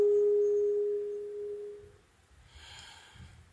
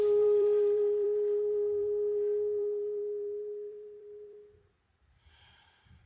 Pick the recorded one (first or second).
first